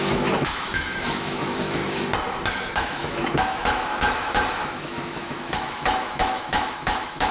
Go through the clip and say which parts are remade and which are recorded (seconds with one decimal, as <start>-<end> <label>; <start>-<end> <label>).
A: 0.0-1.8 remade; 1.8-2.5 recorded; 2.5-7.3 remade